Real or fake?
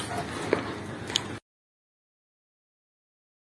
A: real